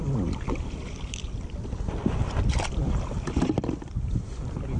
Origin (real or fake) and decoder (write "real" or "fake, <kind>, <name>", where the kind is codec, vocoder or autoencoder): fake, vocoder, BigVGAN v2